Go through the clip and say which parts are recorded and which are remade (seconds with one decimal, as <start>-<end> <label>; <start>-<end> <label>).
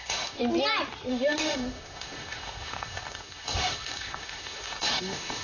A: 0.0-0.4 remade; 0.4-1.1 recorded; 1.1-5.4 remade